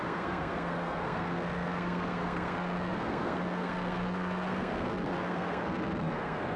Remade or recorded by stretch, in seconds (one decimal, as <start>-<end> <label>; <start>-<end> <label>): 0.0-6.6 remade